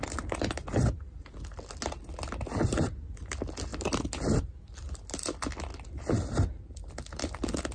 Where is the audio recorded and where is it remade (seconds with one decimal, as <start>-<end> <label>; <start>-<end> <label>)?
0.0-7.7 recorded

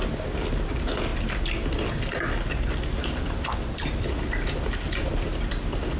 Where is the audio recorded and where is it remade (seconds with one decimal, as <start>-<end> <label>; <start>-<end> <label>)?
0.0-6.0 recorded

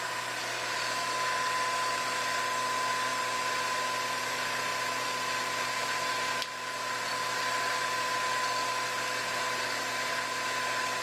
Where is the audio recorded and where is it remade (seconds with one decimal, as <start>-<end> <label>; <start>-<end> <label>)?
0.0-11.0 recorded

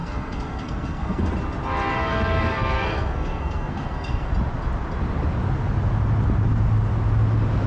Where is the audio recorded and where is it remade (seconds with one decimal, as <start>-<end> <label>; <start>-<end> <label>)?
0.0-1.3 remade; 1.3-2.0 recorded; 2.0-4.3 remade; 4.3-7.7 recorded

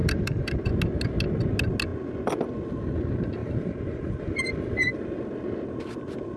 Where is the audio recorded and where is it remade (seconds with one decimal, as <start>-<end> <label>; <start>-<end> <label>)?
0.0-0.7 remade; 0.7-3.4 recorded; 3.4-4.7 remade; 4.7-6.4 recorded

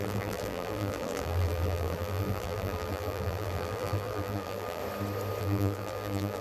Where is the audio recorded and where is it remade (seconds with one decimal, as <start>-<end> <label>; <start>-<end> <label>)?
0.0-4.8 remade; 4.8-5.4 recorded; 5.4-6.4 remade

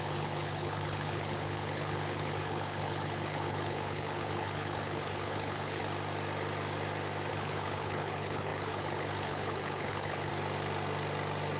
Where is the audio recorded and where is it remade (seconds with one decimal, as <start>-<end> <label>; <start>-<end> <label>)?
0.0-5.8 remade; 5.8-7.3 recorded; 7.3-10.3 remade; 10.3-11.6 recorded